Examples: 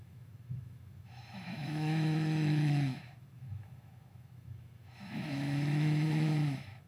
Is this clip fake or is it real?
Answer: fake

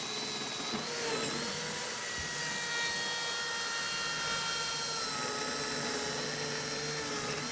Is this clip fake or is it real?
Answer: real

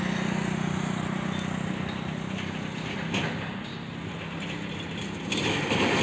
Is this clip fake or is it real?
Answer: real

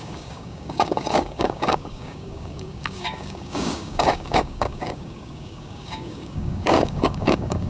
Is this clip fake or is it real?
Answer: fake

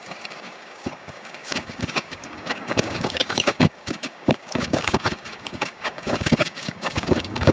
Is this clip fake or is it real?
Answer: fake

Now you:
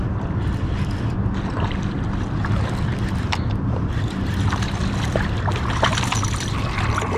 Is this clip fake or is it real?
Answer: real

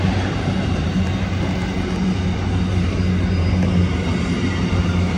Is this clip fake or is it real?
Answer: real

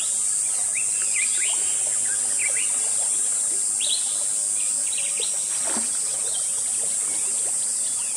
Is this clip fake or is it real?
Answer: real